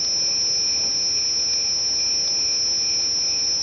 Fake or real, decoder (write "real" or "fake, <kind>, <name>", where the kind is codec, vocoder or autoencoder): real